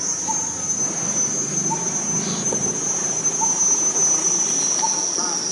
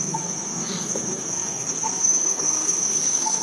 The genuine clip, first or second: first